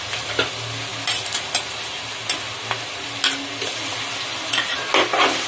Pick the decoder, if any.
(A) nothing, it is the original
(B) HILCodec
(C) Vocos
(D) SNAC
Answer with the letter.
A